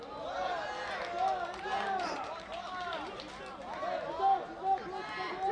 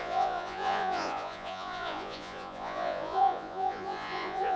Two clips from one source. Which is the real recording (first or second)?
first